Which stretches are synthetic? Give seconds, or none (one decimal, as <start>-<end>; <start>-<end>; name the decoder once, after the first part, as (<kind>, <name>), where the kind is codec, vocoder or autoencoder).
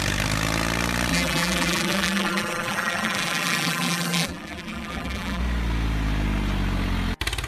1.1-5.4 (vocoder, BigVGAN v2)